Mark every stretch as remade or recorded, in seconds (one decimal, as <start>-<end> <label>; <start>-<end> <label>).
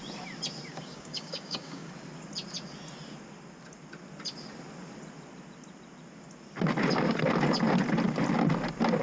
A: 0.0-0.7 recorded; 0.7-1.9 remade; 1.9-9.0 recorded